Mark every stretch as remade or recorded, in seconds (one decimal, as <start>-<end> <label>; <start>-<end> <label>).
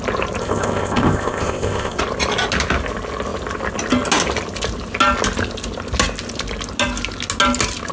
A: 0.0-0.4 recorded; 0.4-2.0 remade; 2.0-7.9 recorded